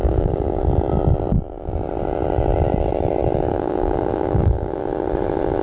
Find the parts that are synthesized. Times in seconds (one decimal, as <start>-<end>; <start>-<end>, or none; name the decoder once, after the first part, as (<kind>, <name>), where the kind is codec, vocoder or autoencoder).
0.0-0.6 (codec, DAC); 3.5-4.8